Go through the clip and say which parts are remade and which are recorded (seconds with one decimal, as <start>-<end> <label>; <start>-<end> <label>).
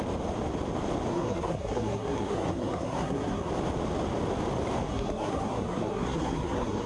0.0-1.1 recorded; 1.1-3.5 remade; 3.5-4.9 recorded; 4.9-6.9 remade